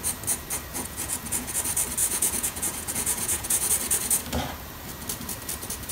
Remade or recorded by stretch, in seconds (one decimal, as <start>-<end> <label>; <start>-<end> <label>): 0.0-0.7 recorded; 0.7-1.6 remade; 1.6-2.0 recorded; 2.0-3.7 remade; 3.7-5.9 recorded

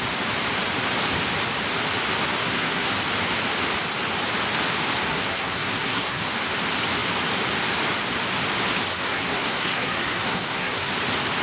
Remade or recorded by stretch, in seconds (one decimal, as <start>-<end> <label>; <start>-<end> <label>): 0.0-2.4 recorded; 2.4-2.9 remade; 2.9-5.1 recorded; 5.1-6.2 remade; 6.2-8.9 recorded; 8.9-10.9 remade; 10.9-11.4 recorded

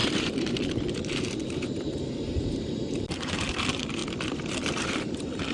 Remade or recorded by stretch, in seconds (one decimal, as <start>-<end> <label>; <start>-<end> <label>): 0.0-4.0 remade; 4.0-4.7 recorded; 4.7-5.5 remade

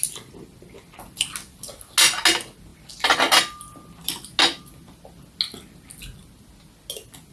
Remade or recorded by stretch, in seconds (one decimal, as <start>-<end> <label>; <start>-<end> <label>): 0.0-7.3 recorded